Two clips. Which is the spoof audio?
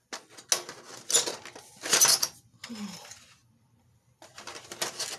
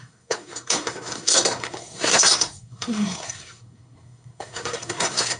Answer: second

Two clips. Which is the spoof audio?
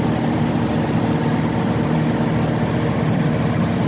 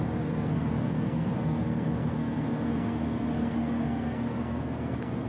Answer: second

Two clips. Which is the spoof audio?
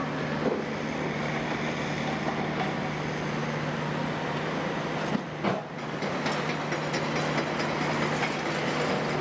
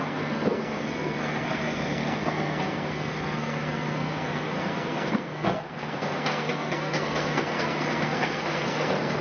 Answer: second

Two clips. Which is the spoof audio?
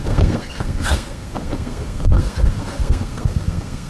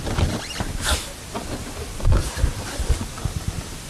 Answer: first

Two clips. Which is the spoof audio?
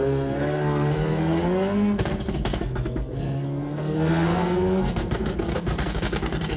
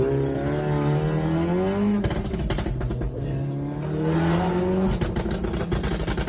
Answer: first